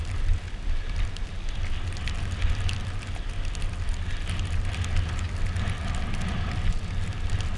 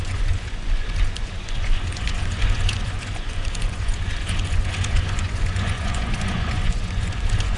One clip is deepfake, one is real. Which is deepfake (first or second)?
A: second